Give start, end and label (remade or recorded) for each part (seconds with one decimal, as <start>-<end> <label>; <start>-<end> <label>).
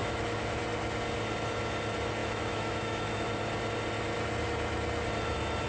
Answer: 0.0-0.6 remade; 0.6-2.2 recorded; 2.2-3.4 remade; 3.4-5.7 recorded